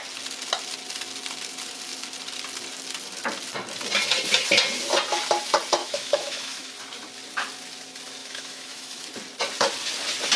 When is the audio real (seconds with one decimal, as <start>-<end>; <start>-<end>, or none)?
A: 0.0-5.8; 6.7-8.2; 9.1-10.4